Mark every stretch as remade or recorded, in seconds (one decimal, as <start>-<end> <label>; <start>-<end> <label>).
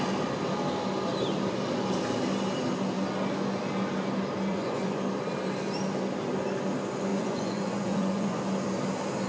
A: 0.0-4.5 recorded; 4.5-5.0 remade; 5.0-7.1 recorded; 7.1-8.4 remade; 8.4-9.3 recorded